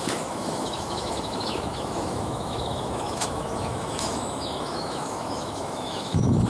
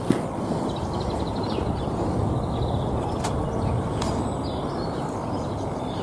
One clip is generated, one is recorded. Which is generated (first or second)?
first